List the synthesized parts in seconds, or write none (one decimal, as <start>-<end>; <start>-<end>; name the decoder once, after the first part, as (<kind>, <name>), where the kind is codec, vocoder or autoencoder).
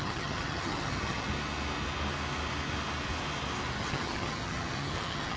0.0-1.3 (vocoder, HiFi-GAN); 3.8-5.4